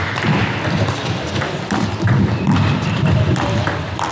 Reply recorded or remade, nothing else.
recorded